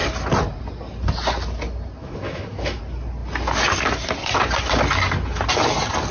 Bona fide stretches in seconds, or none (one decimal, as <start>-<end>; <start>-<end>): 0.0-2.0; 2.8-6.1